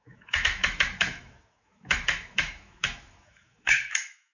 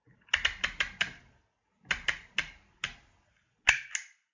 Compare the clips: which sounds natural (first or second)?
second